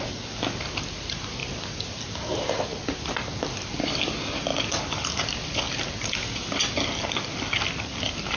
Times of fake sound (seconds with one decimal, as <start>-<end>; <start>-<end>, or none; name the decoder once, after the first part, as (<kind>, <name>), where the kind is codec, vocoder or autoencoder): none